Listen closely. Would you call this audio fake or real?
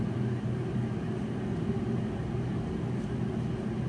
real